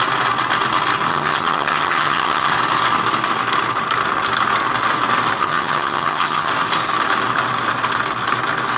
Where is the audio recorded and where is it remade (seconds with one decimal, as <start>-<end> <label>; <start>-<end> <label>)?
0.0-1.1 recorded; 1.1-2.5 remade; 2.5-5.4 recorded; 5.4-6.5 remade; 6.5-8.8 recorded